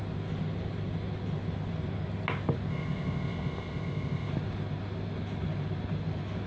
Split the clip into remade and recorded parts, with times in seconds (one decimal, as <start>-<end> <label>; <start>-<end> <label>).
0.0-2.7 recorded; 2.7-4.3 remade; 4.3-6.5 recorded